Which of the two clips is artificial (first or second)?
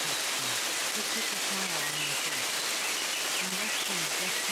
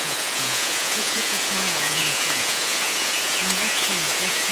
second